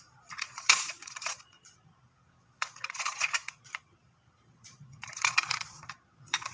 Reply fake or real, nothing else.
fake